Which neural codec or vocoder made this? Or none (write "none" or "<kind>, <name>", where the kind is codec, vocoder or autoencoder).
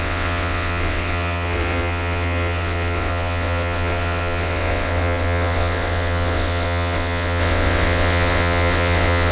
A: vocoder, WaveNeXt